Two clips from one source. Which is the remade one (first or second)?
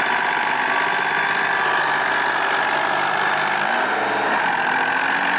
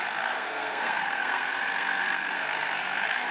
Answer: second